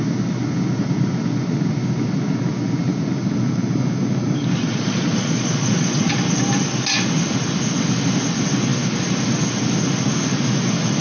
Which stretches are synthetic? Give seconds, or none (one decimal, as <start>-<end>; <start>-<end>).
4.6-6.1